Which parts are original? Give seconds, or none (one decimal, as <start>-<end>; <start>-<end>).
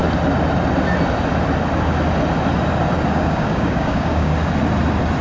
0.0-3.1; 4.3-5.2